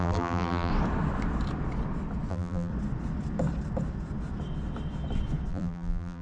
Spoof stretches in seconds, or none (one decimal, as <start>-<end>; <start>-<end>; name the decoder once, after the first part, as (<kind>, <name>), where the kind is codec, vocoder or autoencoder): 0.0-0.7 (vocoder, BigVGAN v2); 2.3-2.7; 5.5-6.2